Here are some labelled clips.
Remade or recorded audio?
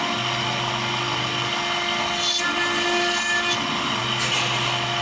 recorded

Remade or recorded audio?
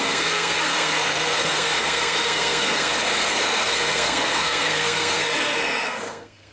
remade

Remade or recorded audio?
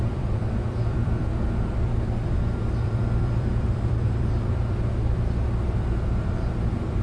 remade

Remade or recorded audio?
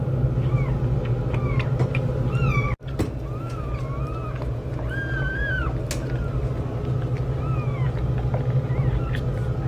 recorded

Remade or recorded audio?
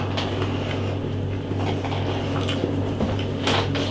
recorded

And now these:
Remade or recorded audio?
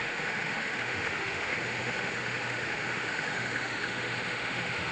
remade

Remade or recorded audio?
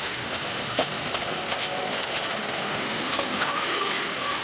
remade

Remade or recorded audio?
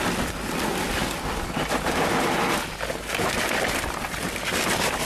recorded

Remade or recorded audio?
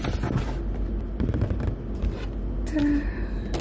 recorded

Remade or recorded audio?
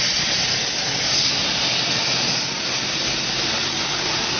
recorded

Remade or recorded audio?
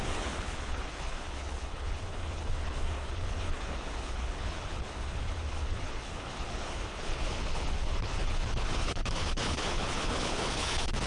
remade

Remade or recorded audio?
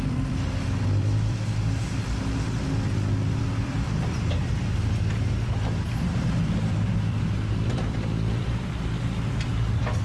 remade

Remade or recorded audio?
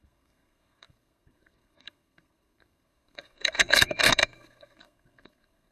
remade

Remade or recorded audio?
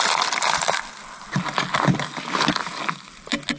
recorded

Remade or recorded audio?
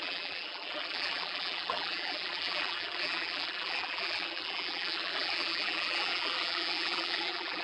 remade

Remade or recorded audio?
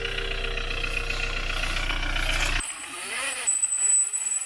recorded